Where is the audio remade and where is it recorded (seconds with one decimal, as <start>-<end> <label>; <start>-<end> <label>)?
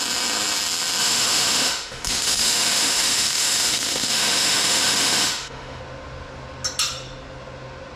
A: 0.0-1.0 recorded; 1.0-5.8 remade; 5.8-8.0 recorded